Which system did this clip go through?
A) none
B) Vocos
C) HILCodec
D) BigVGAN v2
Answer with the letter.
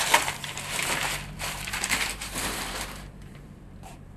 D